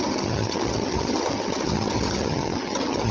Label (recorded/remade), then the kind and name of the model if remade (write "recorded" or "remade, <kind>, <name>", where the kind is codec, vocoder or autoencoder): remade, vocoder, HiFi-GAN